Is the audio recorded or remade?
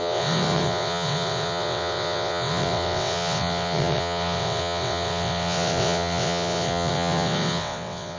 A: remade